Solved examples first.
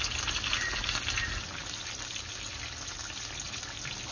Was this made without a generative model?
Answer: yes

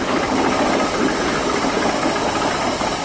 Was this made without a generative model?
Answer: yes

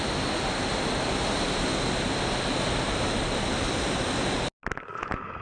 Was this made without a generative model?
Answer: yes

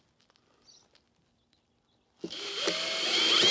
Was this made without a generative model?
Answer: yes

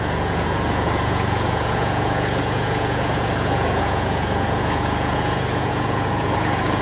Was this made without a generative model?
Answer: no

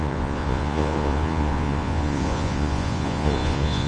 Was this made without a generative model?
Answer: no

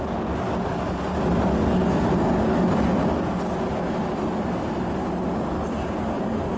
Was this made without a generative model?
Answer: yes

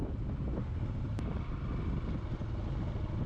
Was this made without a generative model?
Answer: yes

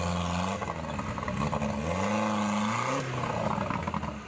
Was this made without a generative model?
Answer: yes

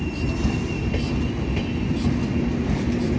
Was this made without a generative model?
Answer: yes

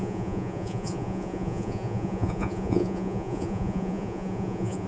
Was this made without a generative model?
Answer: no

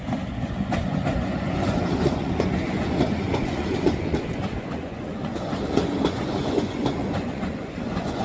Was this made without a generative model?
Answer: no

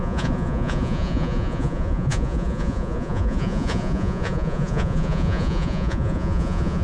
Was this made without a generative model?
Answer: no